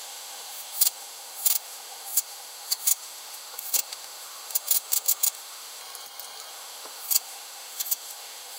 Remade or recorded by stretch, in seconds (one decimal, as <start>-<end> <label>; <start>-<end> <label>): 0.0-5.8 remade; 5.8-6.5 recorded; 6.5-8.6 remade